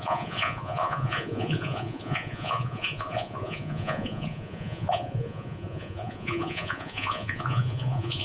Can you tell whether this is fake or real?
fake